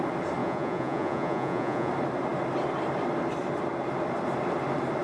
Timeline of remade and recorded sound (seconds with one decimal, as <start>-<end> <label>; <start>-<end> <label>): 0.0-0.4 recorded; 0.4-1.9 remade; 1.9-5.0 recorded